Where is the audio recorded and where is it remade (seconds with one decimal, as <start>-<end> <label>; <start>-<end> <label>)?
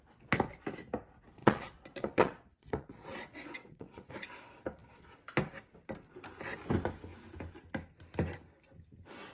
0.0-1.4 recorded; 1.4-4.1 remade; 4.1-9.3 recorded